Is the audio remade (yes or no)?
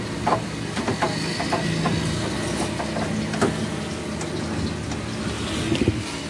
no